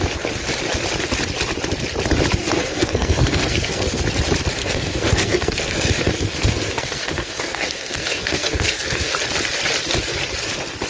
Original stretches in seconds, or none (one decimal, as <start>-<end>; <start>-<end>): 0.0-2.4; 4.0-4.6; 9.1-10.9